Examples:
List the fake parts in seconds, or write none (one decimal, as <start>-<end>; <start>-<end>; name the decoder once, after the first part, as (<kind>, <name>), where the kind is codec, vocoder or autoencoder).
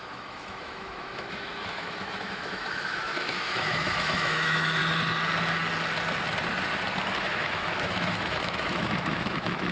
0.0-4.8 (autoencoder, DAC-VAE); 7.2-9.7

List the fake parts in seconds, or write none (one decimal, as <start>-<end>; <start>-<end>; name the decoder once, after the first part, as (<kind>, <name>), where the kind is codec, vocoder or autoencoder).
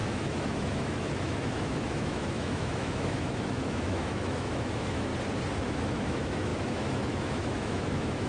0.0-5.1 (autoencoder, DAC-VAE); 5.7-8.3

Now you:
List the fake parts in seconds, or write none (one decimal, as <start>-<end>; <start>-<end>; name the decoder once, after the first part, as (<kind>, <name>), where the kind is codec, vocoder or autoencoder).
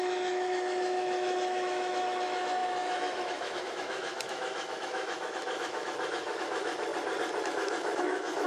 0.0-6.9 (autoencoder, DAC-VAE); 7.4-8.5